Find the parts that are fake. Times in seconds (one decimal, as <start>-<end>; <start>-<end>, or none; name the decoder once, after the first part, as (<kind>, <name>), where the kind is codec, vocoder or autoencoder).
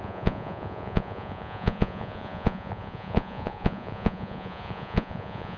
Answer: 0.0-5.6 (vocoder, Vocos)